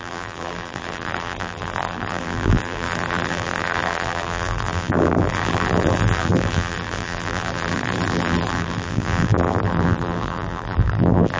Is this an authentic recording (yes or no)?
no